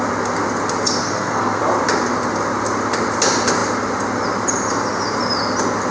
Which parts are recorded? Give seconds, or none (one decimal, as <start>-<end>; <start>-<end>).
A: 0.0-1.0; 1.6-5.9